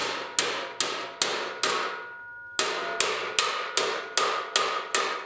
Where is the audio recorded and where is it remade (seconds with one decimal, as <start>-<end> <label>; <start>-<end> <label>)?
0.0-5.3 recorded